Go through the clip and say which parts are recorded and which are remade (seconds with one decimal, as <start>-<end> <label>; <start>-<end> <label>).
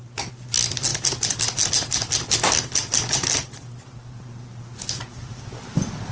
0.0-6.1 recorded